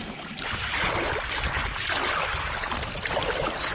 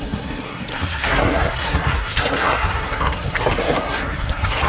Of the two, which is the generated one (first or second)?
second